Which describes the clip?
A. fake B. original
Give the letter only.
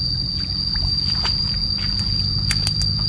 B